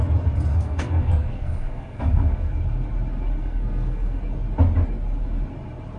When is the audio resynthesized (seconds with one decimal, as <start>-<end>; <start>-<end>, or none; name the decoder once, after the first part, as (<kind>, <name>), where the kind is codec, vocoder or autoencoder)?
0.5-2.5 (codec, SNAC); 3.4-4.2